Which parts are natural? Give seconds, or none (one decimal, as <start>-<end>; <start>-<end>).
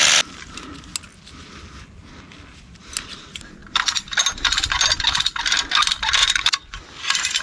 0.0-6.2; 6.8-7.4